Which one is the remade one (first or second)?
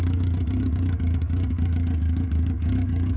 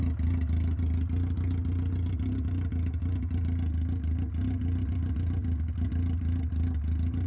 first